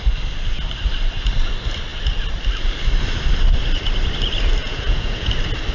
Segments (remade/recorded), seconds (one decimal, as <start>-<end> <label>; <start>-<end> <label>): 0.0-4.6 recorded; 4.6-5.3 remade; 5.3-5.7 recorded